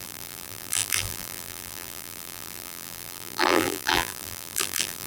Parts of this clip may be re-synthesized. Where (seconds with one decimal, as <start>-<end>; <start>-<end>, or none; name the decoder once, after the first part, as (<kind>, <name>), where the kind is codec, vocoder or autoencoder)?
0.0-5.1 (vocoder, BigVGAN v2)